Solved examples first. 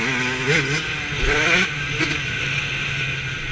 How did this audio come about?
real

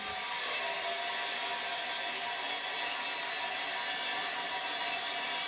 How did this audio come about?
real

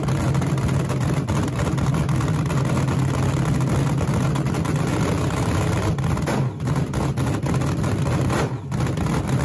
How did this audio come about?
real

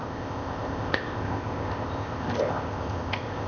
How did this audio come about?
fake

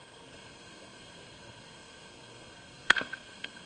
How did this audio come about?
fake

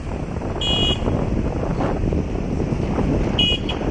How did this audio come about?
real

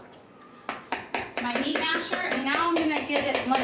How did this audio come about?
fake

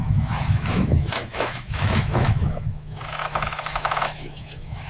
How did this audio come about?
fake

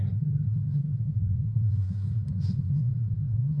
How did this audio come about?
fake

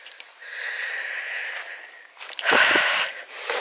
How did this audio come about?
fake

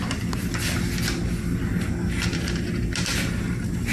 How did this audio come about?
real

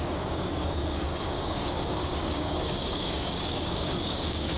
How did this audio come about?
fake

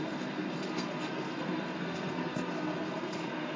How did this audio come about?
fake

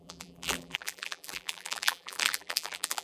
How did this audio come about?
fake